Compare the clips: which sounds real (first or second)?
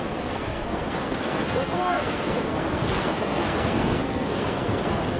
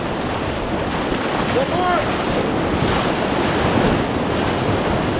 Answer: second